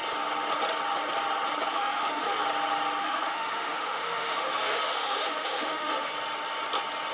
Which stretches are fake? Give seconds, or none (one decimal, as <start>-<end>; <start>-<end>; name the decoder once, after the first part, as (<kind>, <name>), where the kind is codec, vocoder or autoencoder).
1.7-2.4 (autoencoder, DAC-VAE); 3.0-6.1

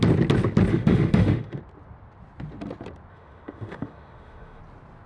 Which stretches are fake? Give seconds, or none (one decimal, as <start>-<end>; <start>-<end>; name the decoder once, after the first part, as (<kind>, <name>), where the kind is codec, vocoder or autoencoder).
0.7-1.6 (autoencoder, DAC-VAE); 3.1-4.6

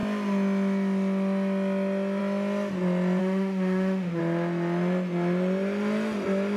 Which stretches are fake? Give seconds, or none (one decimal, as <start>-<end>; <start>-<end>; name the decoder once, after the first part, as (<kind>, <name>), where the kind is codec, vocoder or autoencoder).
3.2-4.2 (autoencoder, DAC-VAE)

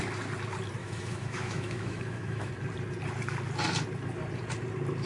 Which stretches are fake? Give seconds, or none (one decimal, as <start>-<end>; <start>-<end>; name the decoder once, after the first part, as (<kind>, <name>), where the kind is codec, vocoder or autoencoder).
0.8-2.5 (autoencoder, DAC-VAE)

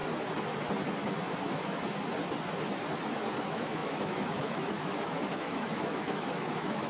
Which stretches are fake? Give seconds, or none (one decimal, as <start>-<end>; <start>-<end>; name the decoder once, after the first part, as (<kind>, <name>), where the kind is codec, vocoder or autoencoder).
3.4-6.9 (autoencoder, DAC-VAE)

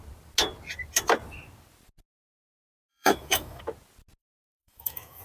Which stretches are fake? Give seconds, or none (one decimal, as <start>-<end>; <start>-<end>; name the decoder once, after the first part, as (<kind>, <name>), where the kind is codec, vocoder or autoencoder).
2.9-3.6 (autoencoder, DAC-VAE); 4.2-5.2